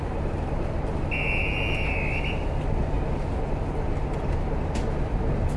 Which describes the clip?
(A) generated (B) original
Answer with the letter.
B